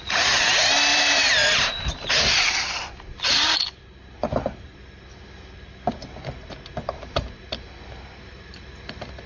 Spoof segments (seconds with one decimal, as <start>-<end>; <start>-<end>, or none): 0.9-2.5